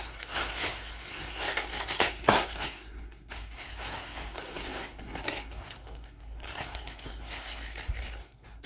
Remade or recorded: remade